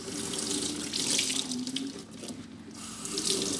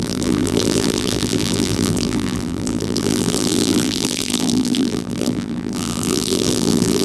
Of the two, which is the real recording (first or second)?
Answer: first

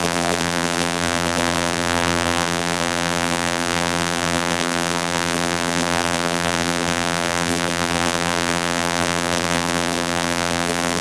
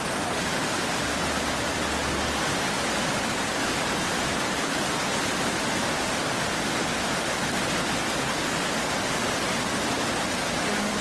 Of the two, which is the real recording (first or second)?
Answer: second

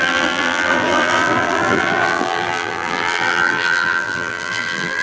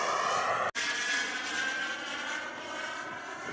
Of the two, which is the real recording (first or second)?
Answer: second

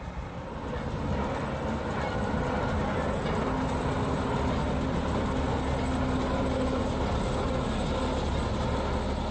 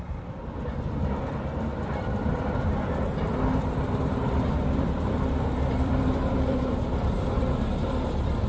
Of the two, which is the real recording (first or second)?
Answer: first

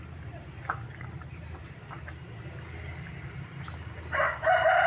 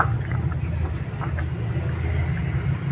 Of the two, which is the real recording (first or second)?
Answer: second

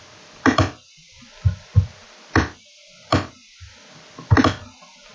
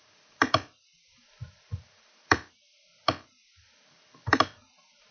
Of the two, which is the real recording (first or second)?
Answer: first